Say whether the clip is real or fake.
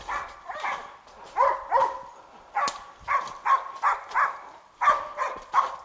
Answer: real